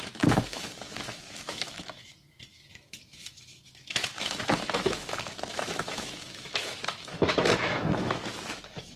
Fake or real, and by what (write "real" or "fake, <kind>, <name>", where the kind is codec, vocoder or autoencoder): fake, autoencoder, DAC-VAE